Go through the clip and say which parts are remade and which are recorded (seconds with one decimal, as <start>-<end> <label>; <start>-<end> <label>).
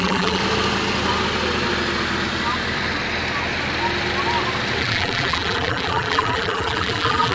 0.0-0.4 remade; 0.4-4.8 recorded; 4.8-7.3 remade